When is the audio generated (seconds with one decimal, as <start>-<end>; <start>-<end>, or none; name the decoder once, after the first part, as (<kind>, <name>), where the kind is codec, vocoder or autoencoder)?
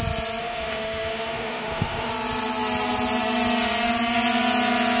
0.4-2.1 (autoencoder, DAC-VAE)